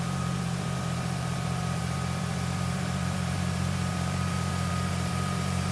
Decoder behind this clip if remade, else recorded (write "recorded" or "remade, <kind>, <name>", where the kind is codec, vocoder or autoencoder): remade, vocoder, BigVGAN v2